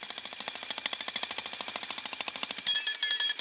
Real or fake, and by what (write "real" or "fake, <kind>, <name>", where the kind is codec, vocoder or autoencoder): real